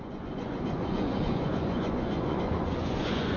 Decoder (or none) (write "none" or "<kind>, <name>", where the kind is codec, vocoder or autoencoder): vocoder, Vocos